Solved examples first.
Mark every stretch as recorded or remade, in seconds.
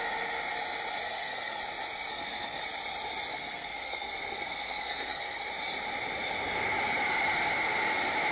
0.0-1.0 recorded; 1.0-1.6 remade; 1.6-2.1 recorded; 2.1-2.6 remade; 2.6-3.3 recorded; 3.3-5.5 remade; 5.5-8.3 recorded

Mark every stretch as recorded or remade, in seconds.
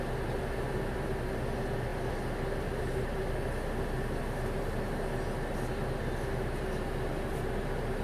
0.0-8.0 recorded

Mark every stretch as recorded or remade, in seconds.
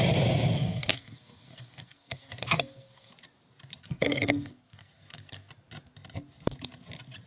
0.0-0.6 recorded; 0.6-3.1 remade; 3.1-3.8 recorded; 3.8-5.5 remade; 5.5-7.3 recorded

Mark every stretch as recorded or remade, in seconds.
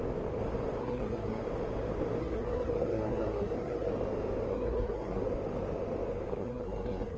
0.0-0.8 recorded; 0.8-1.4 remade; 1.4-2.2 recorded; 2.2-3.9 remade; 3.9-4.5 recorded; 4.5-5.2 remade; 5.2-6.3 recorded; 6.3-7.2 remade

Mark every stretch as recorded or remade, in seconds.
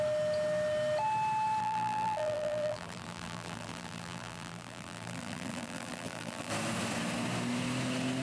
0.0-1.6 recorded; 1.6-6.5 remade; 6.5-8.2 recorded